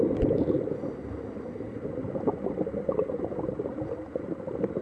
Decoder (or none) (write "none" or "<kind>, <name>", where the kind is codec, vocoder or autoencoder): none